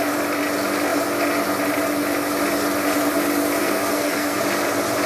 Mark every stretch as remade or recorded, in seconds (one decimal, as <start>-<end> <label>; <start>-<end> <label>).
0.0-3.6 recorded; 3.6-4.4 remade; 4.4-5.1 recorded